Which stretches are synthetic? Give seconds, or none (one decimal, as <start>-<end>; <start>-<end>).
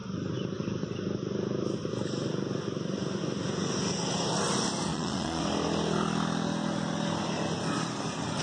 4.9-5.4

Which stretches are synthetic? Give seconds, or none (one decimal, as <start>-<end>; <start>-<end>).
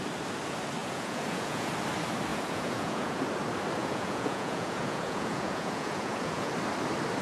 0.8-1.7; 2.3-3.2; 3.8-6.5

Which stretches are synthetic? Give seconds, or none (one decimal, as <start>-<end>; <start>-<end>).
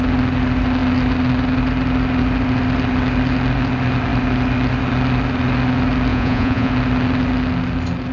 6.1-6.7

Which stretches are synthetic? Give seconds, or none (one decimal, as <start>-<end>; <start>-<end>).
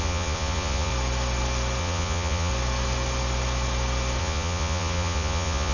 0.0-0.9; 1.8-2.5; 4.2-5.7